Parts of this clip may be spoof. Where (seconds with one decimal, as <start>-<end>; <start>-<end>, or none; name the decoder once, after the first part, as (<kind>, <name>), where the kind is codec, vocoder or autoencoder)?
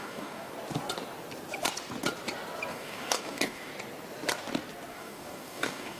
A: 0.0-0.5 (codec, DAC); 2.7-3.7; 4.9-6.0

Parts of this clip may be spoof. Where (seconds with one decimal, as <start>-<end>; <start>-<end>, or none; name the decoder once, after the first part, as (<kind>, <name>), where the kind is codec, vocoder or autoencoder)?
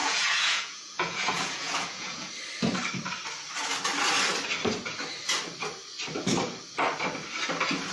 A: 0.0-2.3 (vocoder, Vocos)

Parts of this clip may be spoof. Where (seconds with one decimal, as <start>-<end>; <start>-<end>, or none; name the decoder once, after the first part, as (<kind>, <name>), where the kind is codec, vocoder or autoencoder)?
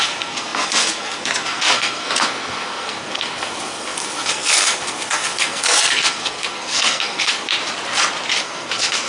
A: 0.0-7.5 (codec, SNAC); 8.4-9.1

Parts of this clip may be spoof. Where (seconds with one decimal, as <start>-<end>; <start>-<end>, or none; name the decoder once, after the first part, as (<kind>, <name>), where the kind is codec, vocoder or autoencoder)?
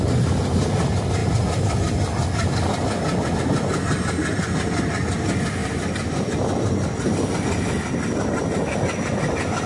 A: 5.6-6.3 (vocoder, BigVGAN v2)